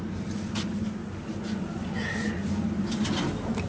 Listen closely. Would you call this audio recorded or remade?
recorded